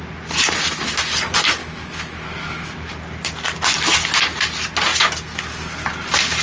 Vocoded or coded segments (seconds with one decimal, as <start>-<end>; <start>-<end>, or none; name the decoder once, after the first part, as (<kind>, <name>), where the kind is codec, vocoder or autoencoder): 1.6-2.9 (autoencoder, DAC-VAE)